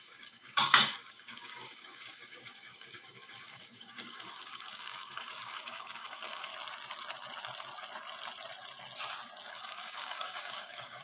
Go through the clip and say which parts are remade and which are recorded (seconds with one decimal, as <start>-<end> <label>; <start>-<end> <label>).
0.0-6.5 remade; 6.5-9.5 recorded; 9.5-11.0 remade